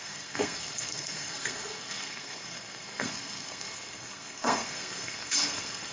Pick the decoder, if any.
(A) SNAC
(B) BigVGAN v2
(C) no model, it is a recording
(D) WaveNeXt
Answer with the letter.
A